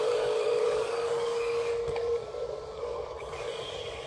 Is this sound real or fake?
fake